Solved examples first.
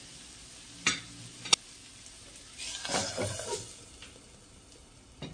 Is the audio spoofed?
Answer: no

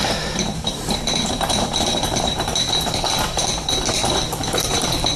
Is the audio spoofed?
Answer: yes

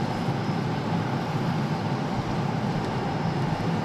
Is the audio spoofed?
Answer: no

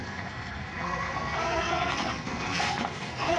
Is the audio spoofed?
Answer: yes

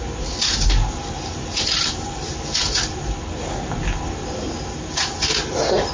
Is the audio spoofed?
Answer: no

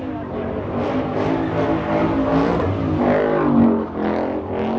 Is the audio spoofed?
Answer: no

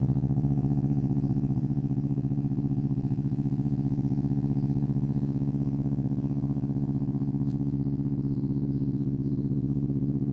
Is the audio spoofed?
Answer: yes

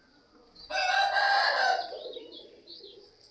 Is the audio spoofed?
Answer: no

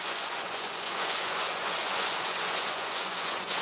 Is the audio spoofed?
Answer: yes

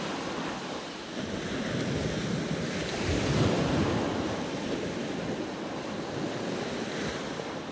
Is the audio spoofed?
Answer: no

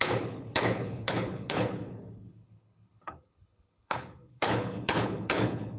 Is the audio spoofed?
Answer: yes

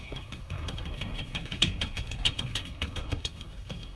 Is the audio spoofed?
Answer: yes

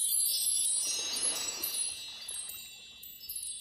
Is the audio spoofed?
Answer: yes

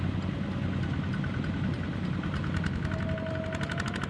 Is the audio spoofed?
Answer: no